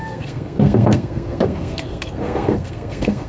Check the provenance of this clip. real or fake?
fake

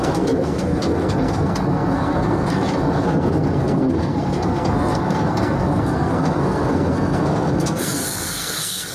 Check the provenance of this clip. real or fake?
fake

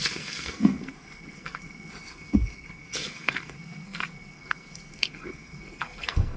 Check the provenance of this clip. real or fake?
fake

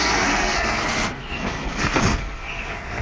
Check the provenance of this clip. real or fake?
fake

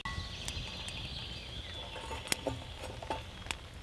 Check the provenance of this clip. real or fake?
real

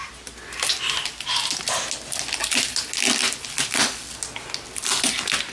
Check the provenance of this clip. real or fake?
real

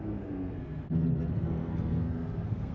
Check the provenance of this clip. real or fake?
fake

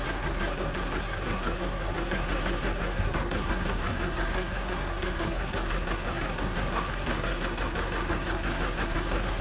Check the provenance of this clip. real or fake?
fake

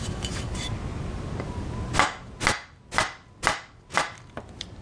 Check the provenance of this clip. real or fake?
real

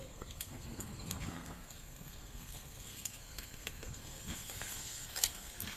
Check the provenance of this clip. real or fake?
fake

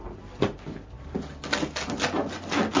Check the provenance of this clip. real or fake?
real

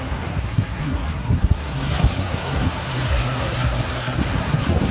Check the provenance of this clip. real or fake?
fake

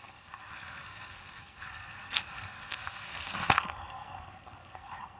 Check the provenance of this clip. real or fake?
fake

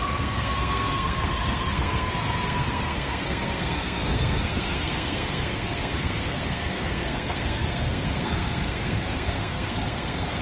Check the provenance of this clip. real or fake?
fake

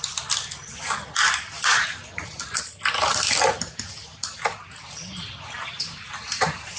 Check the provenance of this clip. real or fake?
real